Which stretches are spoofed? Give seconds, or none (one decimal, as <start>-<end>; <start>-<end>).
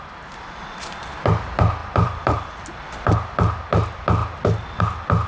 1.8-3.0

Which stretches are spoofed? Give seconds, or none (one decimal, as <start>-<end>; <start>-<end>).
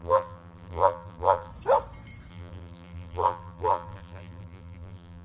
0.0-1.5; 2.3-5.2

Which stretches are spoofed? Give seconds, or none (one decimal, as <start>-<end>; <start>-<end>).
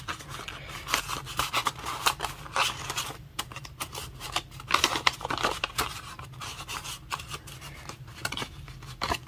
1.6-6.2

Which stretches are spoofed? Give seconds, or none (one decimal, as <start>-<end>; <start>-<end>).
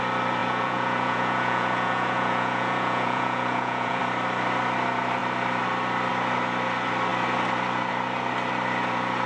0.4-4.0